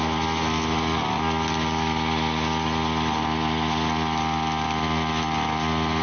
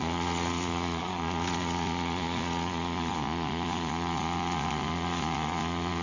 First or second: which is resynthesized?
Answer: second